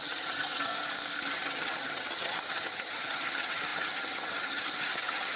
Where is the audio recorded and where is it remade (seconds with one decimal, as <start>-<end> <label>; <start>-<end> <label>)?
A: 0.0-0.7 remade; 0.7-1.2 recorded; 1.2-5.4 remade